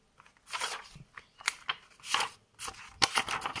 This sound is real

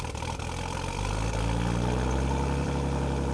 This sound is fake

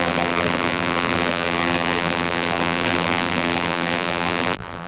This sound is fake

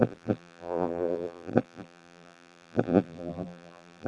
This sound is fake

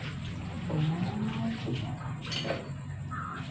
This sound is real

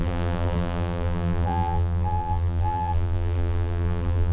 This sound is fake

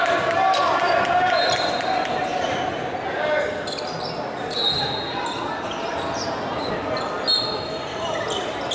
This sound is real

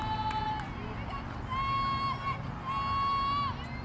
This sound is real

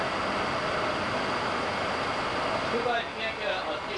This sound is real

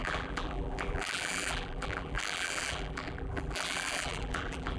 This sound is fake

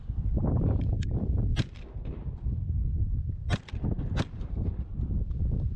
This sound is fake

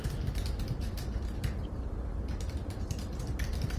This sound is real